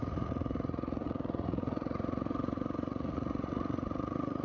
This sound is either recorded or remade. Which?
remade